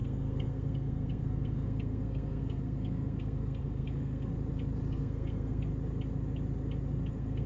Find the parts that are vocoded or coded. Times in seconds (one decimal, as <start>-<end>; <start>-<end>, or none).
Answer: 0.0-4.3; 4.9-5.7; 7.1-7.5